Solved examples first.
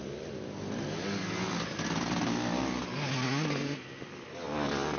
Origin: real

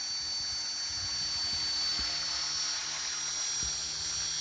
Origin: real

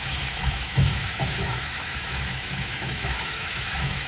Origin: fake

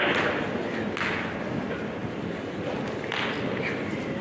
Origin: real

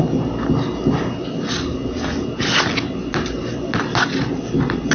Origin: real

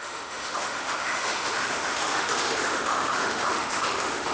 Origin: fake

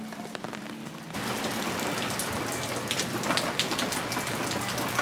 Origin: real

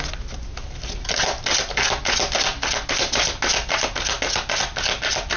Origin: real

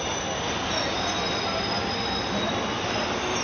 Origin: real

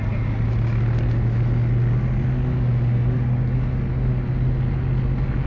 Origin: real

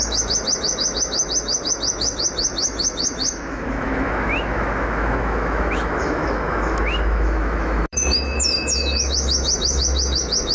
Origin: fake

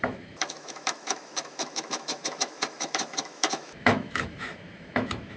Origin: fake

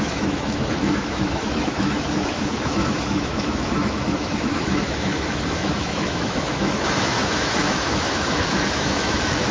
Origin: fake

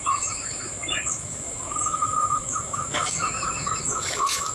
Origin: fake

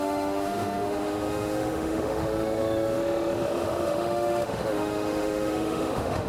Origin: fake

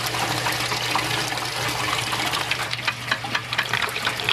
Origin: real